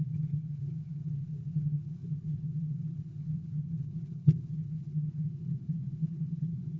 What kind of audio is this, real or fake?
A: fake